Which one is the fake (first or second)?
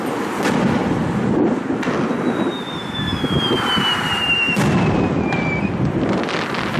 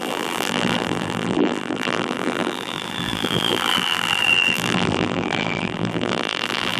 second